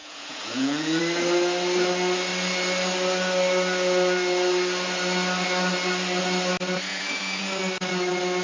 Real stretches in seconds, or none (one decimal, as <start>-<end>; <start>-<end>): 1.0-6.9; 7.4-8.4